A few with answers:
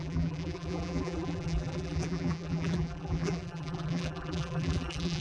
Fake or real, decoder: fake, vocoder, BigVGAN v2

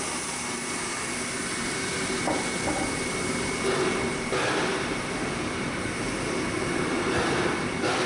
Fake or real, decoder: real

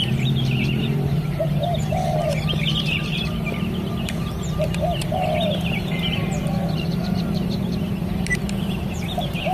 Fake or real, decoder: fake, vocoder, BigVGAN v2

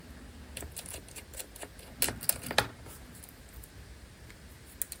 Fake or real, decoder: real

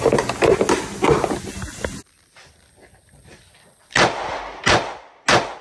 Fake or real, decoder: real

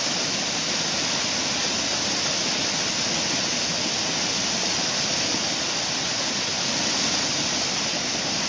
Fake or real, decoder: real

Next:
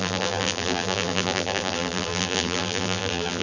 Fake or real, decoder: fake, vocoder, BigVGAN v2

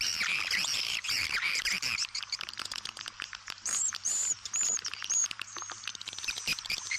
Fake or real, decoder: fake, vocoder, BigVGAN v2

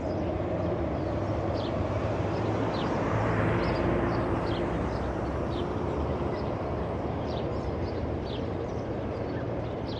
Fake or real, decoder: fake, vocoder, BigVGAN v2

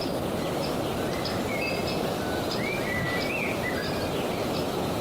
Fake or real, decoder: real